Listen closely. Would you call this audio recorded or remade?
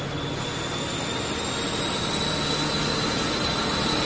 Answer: recorded